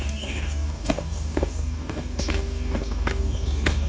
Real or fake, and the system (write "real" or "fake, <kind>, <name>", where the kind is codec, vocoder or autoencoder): fake, codec, DAC